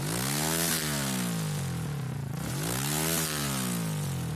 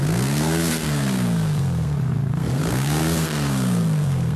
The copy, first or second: second